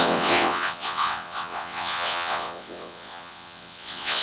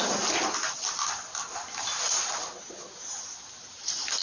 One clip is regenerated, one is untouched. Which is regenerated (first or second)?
first